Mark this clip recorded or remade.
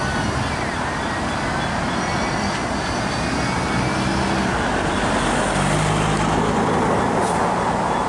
recorded